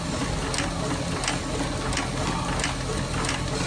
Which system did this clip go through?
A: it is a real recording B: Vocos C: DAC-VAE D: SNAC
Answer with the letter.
A